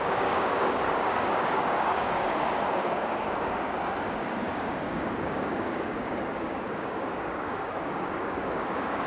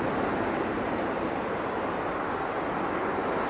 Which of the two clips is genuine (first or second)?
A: second